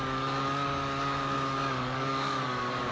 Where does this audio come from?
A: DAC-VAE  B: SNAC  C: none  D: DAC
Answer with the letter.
D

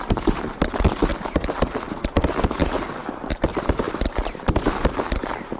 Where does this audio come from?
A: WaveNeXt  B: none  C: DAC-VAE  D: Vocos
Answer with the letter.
B